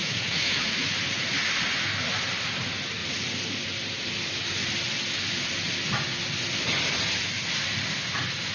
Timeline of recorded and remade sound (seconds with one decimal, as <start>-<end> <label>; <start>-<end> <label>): 0.0-0.9 remade; 0.9-8.5 recorded